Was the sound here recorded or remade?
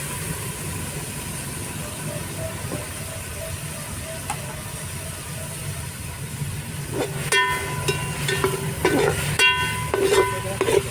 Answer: recorded